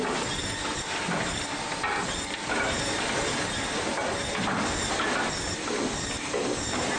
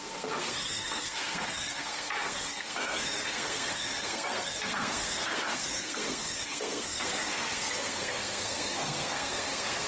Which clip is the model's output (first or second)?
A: second